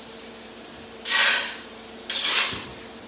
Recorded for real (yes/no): yes